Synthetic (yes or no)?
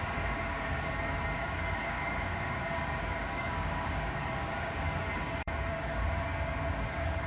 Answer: yes